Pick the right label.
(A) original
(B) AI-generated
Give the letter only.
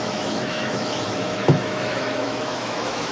B